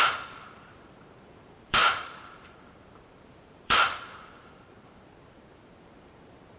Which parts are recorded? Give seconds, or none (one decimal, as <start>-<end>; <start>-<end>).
none